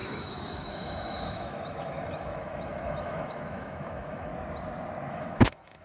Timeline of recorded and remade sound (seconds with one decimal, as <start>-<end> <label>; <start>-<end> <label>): 0.0-4.3 remade; 4.3-5.1 recorded; 5.1-5.8 remade

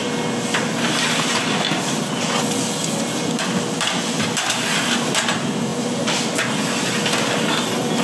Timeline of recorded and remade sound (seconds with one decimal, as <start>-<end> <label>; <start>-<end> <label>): 0.0-8.0 recorded

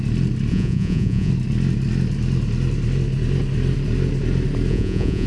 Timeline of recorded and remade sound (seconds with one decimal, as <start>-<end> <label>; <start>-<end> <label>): 0.0-0.5 recorded; 0.5-1.3 remade; 1.3-4.7 recorded; 4.7-5.3 remade